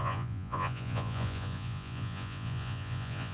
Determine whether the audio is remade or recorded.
remade